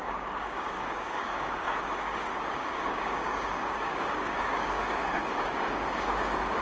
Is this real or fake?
fake